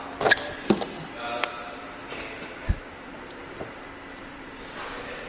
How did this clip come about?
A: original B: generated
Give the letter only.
A